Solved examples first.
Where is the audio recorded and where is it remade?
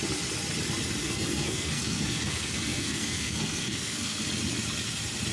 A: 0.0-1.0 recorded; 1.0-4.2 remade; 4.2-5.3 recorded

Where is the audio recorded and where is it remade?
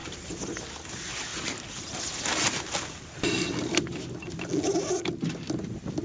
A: 0.0-6.0 recorded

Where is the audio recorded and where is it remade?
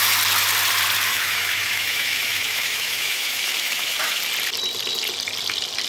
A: 0.0-1.1 recorded; 1.1-4.2 remade; 4.2-5.9 recorded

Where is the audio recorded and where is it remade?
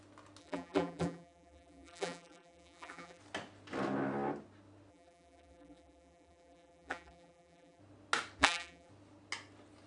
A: 0.0-0.4 recorded; 0.4-3.2 remade; 3.2-4.9 recorded; 4.9-7.8 remade; 7.8-8.4 recorded; 8.4-8.9 remade; 8.9-9.9 recorded